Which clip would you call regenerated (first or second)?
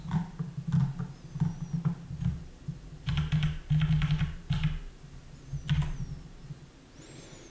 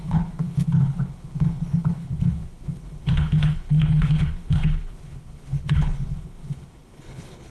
second